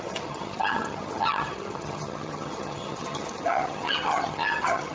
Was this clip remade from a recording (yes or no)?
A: yes